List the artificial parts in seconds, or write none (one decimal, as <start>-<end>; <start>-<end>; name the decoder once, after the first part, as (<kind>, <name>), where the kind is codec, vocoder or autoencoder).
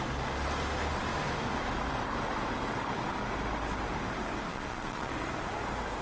4.5-5.1 (vocoder, Vocos)